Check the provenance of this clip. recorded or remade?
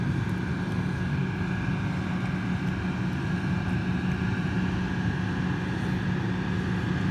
recorded